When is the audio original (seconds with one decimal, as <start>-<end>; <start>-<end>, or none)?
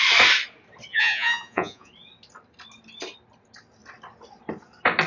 0.0-0.9; 1.9-5.1